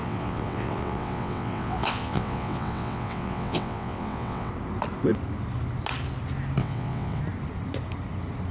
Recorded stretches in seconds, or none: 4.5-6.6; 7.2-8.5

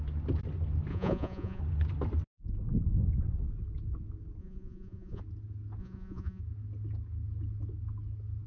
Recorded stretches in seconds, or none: 0.0-0.9; 1.6-4.4; 5.2-5.8; 6.4-8.5

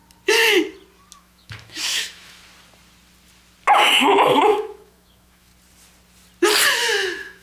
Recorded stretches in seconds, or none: 0.0-1.2; 2.4-4.4; 5.5-6.7

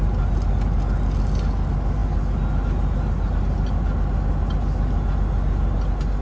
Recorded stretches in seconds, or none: 0.0-6.2